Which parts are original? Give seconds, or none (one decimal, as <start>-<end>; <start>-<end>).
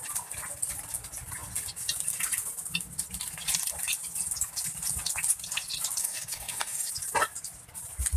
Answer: 0.0-6.0; 6.9-8.2